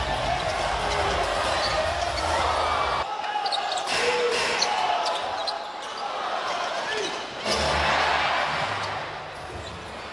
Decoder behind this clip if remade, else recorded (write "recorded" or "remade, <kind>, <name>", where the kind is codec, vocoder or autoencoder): recorded